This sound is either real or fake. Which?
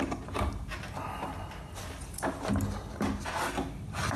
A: real